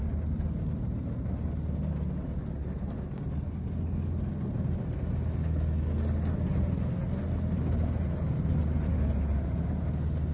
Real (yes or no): yes